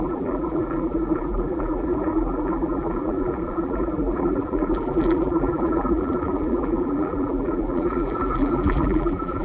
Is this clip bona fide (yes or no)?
no